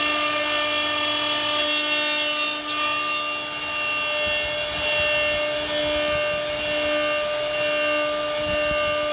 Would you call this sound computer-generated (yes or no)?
no